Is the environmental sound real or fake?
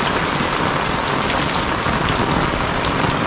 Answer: real